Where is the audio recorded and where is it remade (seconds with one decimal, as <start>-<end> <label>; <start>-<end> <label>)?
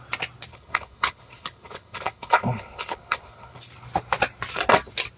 0.0-0.5 recorded; 0.5-3.6 remade; 3.6-5.2 recorded